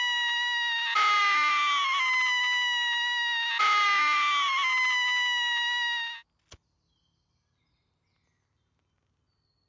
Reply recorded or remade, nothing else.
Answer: recorded